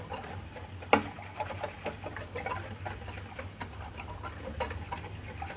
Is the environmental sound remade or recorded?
recorded